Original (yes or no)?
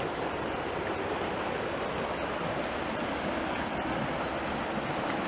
yes